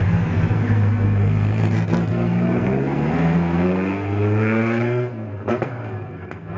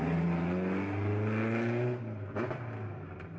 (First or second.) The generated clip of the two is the first